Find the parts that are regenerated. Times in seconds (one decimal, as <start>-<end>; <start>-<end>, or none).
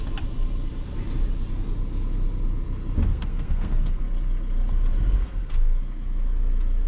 3.1-4.0; 5.2-5.8